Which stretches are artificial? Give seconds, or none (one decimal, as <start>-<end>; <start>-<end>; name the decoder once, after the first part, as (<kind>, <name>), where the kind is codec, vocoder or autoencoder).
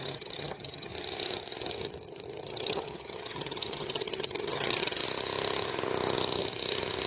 0.0-0.9 (vocoder, HiFi-GAN); 2.4-5.0